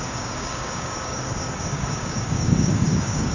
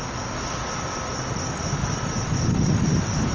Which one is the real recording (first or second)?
second